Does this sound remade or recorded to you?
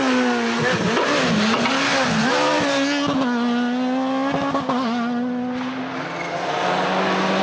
recorded